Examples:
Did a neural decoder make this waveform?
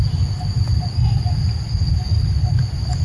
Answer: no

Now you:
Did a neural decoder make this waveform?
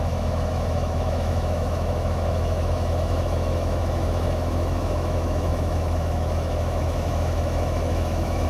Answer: yes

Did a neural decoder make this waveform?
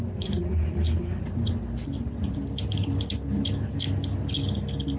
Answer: no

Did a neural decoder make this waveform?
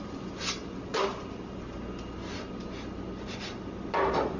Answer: no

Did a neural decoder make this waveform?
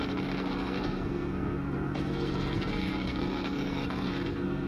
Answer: yes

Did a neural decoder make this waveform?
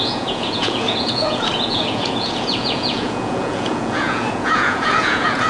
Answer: yes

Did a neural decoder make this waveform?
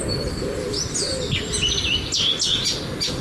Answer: no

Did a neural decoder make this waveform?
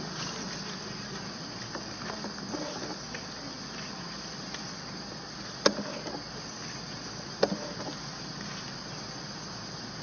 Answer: no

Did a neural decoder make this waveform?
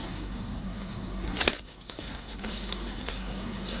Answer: yes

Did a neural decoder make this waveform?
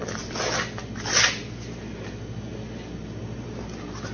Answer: no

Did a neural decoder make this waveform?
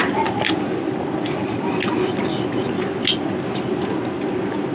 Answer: no